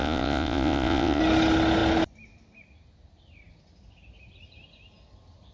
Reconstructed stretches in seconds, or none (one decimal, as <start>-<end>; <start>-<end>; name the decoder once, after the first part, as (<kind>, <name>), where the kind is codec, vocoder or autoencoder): 0.0-1.2 (vocoder, Vocos)